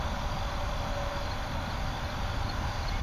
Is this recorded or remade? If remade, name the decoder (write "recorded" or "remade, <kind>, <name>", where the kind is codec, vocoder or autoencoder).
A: recorded